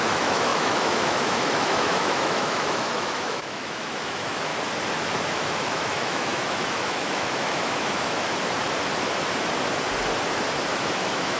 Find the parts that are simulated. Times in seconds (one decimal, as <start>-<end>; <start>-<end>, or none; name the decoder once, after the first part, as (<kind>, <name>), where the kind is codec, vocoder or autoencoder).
0.0-4.5 (autoencoder, DAC-VAE); 5.3-8.3; 10.7-11.4